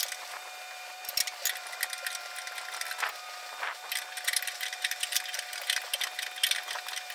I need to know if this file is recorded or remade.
recorded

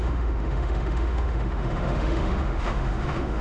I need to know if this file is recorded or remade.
remade